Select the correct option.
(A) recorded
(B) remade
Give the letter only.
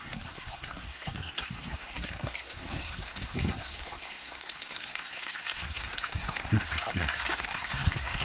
B